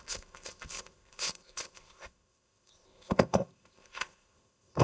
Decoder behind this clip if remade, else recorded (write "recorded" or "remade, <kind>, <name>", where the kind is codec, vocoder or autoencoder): remade, codec, ZipCodec